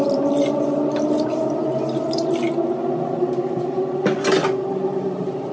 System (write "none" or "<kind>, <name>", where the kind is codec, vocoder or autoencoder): none